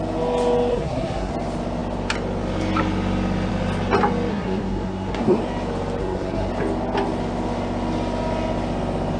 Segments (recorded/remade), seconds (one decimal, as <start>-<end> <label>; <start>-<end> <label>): 0.0-0.7 recorded; 0.7-1.3 remade; 1.3-4.3 recorded; 4.3-5.4 remade; 5.4-6.0 recorded; 6.0-6.5 remade; 6.5-9.2 recorded